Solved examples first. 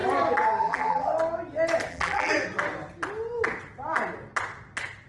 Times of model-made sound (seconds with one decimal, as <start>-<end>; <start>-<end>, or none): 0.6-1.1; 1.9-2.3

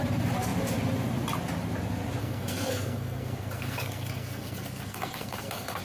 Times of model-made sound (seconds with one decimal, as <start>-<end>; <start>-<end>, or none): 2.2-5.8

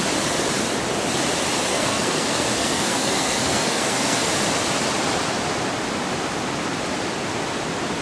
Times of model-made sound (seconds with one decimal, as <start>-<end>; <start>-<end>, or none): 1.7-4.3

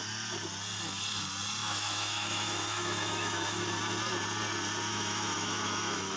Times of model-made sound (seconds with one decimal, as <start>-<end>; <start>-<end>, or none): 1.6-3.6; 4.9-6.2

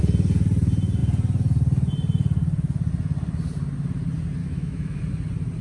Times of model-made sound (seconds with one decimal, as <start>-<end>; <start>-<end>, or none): 4.4-5.0